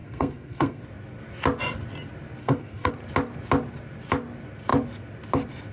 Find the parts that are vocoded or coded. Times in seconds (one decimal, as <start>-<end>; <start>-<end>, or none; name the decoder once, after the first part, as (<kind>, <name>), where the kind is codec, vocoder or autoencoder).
0.0-0.8 (codec, SNAC); 2.4-2.9